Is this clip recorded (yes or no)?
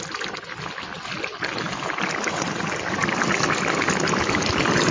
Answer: yes